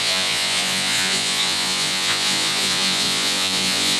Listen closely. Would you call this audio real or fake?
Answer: fake